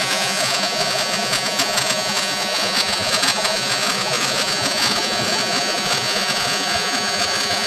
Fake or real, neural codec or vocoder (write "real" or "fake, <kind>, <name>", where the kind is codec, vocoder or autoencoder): fake, vocoder, Vocos